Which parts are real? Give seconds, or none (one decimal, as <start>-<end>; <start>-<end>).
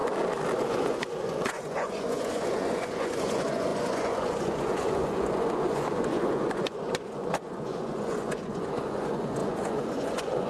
0.0-0.6